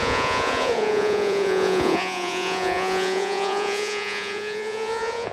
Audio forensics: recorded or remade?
remade